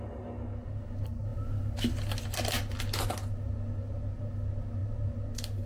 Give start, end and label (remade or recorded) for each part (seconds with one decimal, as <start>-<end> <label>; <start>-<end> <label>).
0.0-5.7 recorded